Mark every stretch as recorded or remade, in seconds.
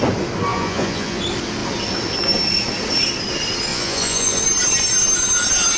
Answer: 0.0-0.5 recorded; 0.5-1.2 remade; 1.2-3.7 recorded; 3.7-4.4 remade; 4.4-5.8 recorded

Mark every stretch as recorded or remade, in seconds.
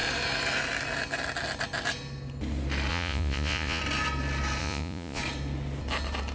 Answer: 0.0-2.9 recorded; 2.9-3.8 remade; 3.8-4.6 recorded; 4.6-5.2 remade; 5.2-6.3 recorded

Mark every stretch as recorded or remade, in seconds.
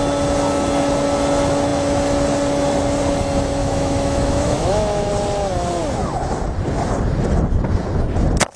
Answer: 0.0-3.6 recorded; 3.6-5.1 remade; 5.1-8.6 recorded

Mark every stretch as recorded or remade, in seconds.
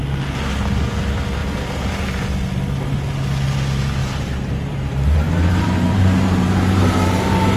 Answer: 0.0-1.4 recorded; 1.4-2.1 remade; 2.1-4.0 recorded; 4.0-7.6 remade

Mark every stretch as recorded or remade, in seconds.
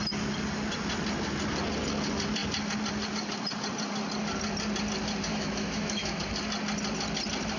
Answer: 0.0-5.3 recorded; 5.3-6.2 remade; 6.2-7.6 recorded